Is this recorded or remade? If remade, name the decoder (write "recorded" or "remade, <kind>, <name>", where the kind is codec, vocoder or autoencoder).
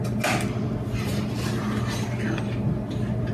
recorded